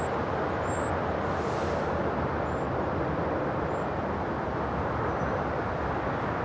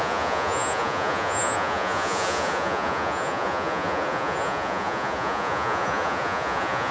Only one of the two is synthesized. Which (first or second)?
second